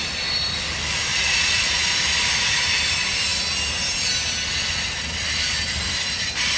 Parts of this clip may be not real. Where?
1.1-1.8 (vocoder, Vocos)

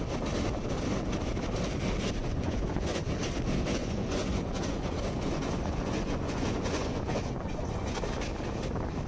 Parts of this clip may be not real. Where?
2.2-3.0 (vocoder, Vocos); 3.8-8.0

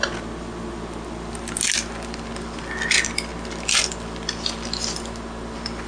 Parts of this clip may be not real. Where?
none

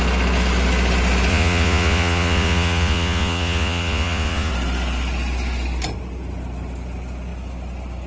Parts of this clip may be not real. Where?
1.3-4.5 (vocoder, Vocos)

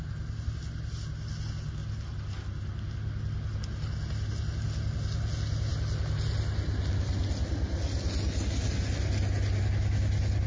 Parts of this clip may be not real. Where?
none

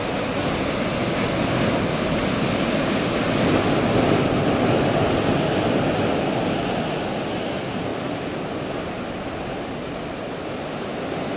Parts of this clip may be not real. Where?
none

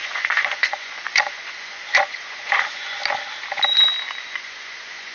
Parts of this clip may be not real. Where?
0.0-3.0 (vocoder, Vocos); 4.2-5.1

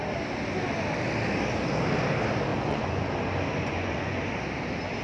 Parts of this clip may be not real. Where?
2.5-3.0 (vocoder, Vocos); 3.6-4.2